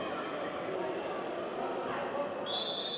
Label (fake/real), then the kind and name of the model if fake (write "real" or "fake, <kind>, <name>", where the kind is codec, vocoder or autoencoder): real